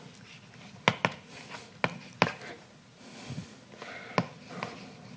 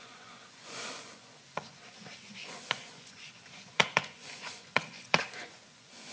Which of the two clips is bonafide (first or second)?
first